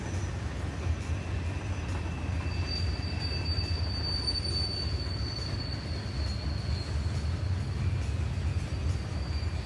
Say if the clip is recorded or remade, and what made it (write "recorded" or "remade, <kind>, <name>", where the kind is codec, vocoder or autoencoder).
recorded